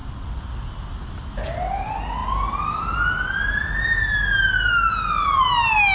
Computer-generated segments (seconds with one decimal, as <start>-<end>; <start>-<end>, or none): none